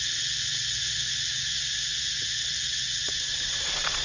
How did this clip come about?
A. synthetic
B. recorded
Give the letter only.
A